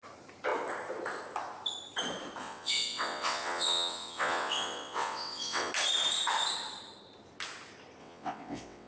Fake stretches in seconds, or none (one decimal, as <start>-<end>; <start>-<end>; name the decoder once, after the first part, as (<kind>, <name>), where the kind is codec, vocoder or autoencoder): 2.4-5.7 (vocoder, WaveNeXt); 8.0-8.9